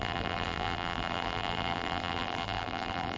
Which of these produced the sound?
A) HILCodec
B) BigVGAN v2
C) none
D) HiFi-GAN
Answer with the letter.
B